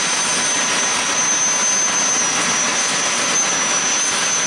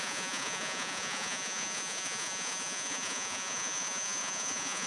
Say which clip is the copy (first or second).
second